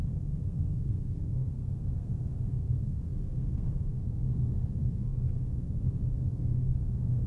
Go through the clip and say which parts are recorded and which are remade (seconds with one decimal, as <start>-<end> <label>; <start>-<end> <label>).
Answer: 0.0-7.3 remade